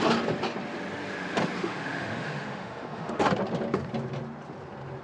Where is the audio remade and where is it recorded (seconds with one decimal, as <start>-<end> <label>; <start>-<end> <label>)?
0.0-1.6 recorded; 1.6-3.3 remade; 3.3-5.0 recorded